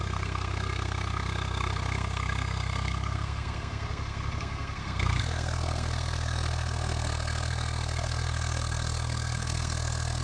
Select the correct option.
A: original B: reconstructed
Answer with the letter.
B